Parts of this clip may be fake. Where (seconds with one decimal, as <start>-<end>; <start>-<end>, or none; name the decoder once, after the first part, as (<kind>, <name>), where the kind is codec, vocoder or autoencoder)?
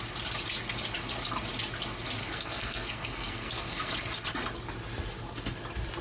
2.2-3.9 (codec, SNAC)